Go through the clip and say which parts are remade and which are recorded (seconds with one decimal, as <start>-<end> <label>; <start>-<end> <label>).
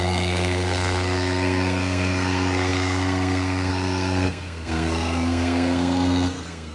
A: 0.0-6.7 remade